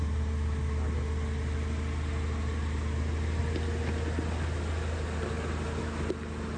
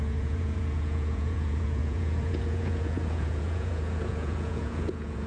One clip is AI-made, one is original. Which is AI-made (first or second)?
second